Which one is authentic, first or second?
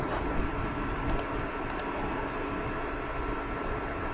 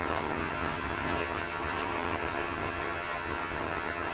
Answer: first